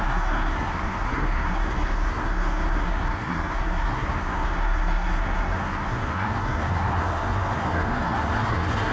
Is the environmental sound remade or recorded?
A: remade